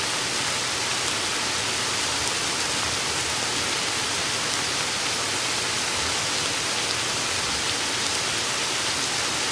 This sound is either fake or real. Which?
real